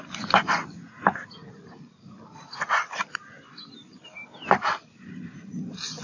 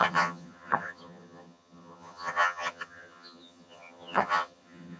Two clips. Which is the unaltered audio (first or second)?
first